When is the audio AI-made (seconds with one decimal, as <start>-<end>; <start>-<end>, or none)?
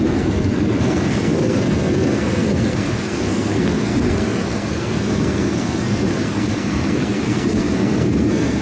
0.0-8.6